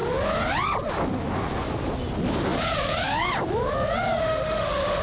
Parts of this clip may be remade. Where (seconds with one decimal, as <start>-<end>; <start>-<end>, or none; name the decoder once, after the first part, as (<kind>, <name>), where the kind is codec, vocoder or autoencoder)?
4.2-5.0 (autoencoder, DAC-VAE)